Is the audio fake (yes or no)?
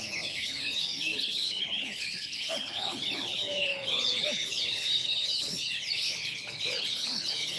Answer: yes